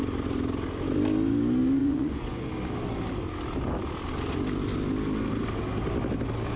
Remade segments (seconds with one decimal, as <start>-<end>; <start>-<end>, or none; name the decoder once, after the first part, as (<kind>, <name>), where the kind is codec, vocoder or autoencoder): 1.8-2.4 (vocoder, Vocos)